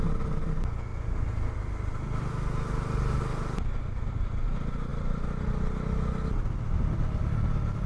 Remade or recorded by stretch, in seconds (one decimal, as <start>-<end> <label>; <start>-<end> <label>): 0.0-7.9 recorded

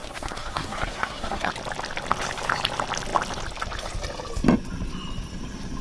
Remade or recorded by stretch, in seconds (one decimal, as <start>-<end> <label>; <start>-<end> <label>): 0.0-1.5 remade; 1.5-5.8 recorded

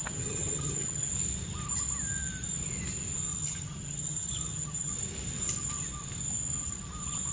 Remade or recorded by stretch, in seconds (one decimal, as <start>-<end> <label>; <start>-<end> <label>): 0.0-1.1 remade; 1.1-3.3 recorded; 3.3-4.9 remade; 4.9-7.3 recorded

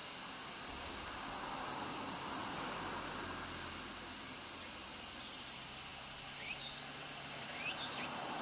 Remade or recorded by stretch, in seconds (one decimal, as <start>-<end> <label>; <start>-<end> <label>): 0.0-8.4 recorded

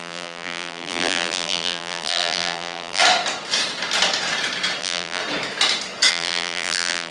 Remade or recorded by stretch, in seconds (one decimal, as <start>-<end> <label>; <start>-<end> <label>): 0.0-3.0 remade; 3.0-4.8 recorded; 4.8-5.2 remade; 5.2-6.1 recorded; 6.1-7.1 remade

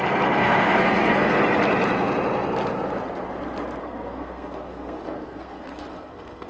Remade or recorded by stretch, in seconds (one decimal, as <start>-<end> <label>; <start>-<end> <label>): 0.0-0.4 recorded; 0.4-1.4 remade; 1.4-3.8 recorded; 3.8-6.5 remade

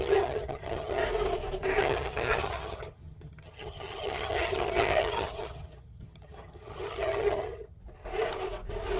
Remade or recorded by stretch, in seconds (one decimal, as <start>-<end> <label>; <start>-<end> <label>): 0.0-1.0 remade; 1.0-1.8 recorded; 1.8-7.8 remade; 7.8-9.0 recorded

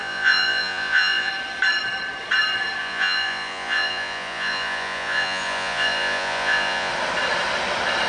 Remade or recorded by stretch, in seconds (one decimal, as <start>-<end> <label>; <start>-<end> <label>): 0.0-1.3 remade; 1.3-2.8 recorded; 2.8-6.9 remade; 6.9-8.1 recorded